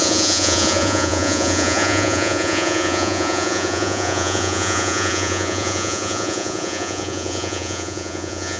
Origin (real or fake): fake